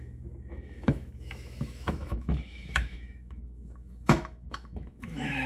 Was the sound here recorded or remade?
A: remade